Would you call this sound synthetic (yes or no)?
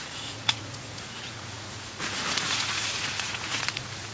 yes